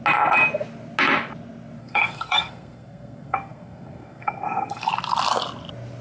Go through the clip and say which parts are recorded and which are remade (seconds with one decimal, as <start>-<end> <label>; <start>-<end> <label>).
0.0-1.8 recorded; 1.8-4.9 remade; 4.9-6.0 recorded